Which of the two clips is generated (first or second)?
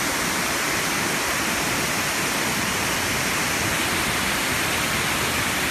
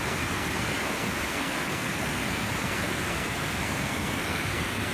second